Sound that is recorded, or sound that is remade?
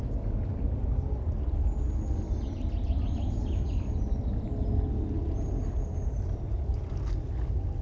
recorded